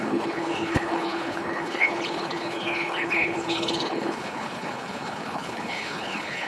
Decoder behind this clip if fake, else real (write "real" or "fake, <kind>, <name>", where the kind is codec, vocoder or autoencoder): fake, codec, HILCodec